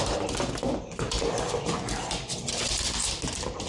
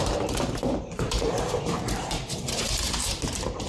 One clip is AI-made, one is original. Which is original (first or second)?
first